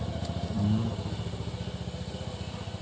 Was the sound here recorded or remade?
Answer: recorded